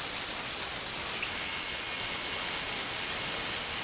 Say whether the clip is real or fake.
real